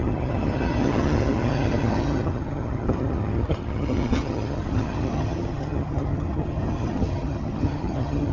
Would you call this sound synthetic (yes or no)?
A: yes